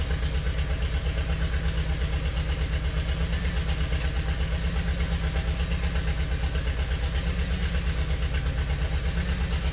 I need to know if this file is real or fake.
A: real